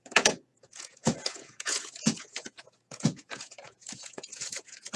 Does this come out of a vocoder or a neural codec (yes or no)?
yes